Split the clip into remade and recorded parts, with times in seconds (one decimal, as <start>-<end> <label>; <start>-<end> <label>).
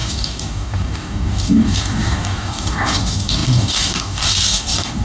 0.0-5.0 remade